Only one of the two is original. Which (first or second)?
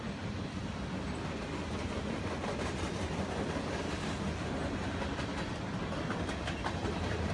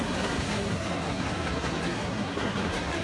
first